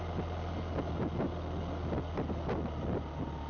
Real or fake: real